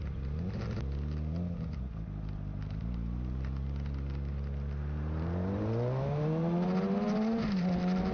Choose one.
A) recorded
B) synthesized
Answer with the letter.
A